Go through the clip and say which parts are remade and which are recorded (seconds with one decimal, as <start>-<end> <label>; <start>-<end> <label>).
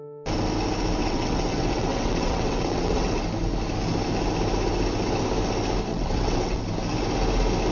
0.0-1.0 recorded; 1.0-3.2 remade; 3.2-5.9 recorded; 5.9-6.6 remade; 6.6-7.7 recorded